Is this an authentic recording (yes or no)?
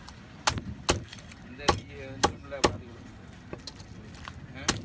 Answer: yes